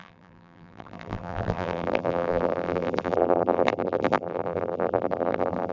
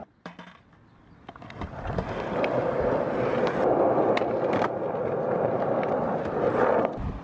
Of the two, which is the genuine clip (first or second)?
second